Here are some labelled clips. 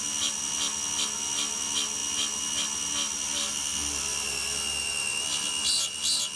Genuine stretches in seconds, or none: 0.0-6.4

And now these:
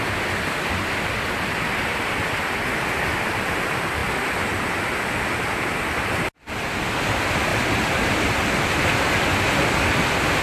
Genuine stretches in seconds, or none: 0.0-10.4

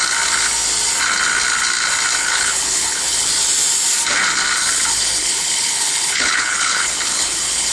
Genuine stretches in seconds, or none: 0.0-2.2; 3.3-4.6

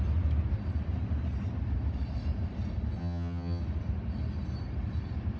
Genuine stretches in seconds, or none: 0.0-3.0; 3.6-5.4

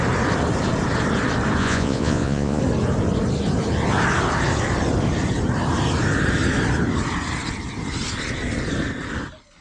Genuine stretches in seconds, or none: 0.0-1.6; 2.6-9.6

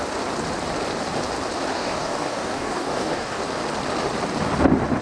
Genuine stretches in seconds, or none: 0.0-1.7; 3.4-5.0

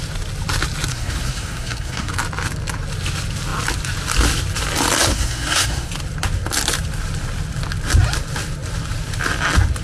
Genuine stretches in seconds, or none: 0.0-0.9; 2.1-5.1; 5.9-9.8

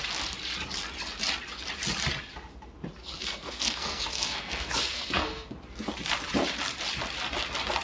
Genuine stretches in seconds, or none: 0.0-3.0; 5.5-7.8